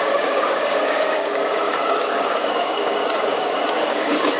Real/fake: fake